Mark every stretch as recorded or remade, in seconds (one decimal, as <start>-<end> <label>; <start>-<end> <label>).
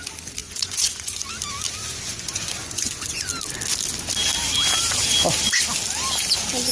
0.0-0.4 recorded; 0.4-1.3 remade; 1.3-1.8 recorded; 1.8-3.3 remade; 3.3-6.7 recorded